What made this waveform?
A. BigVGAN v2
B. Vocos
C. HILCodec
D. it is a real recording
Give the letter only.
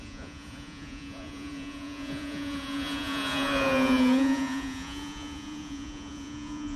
B